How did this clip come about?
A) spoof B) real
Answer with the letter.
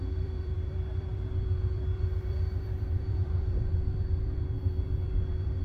A